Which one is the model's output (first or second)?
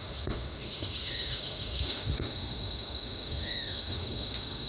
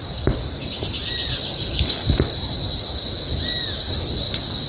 first